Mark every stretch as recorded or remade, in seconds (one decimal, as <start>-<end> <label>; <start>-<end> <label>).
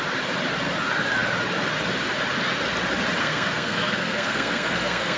0.0-3.2 recorded; 3.2-5.2 remade